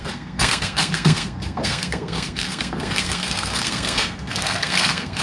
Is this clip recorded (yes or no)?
no